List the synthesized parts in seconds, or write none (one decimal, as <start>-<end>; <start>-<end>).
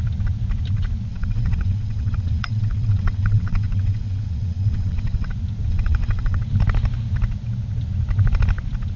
1.1-5.3; 5.7-6.4